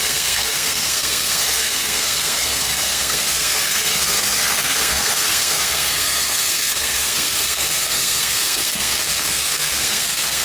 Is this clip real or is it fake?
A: fake